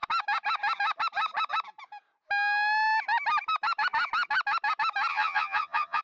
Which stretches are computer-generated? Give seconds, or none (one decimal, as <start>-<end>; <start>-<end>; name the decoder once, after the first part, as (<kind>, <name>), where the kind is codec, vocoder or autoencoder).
5.1-6.0 (vocoder, HiFi-GAN)